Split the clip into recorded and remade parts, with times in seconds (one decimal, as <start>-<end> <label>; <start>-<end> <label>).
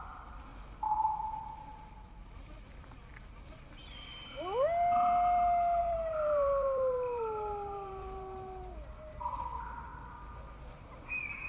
0.0-0.5 remade; 0.5-5.8 recorded; 5.8-9.9 remade; 9.9-10.7 recorded; 10.7-11.5 remade